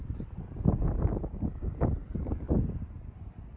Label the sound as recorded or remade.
recorded